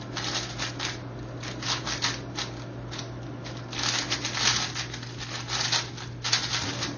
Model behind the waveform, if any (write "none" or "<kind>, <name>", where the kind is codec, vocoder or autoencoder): none